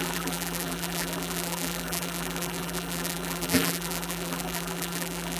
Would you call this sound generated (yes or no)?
yes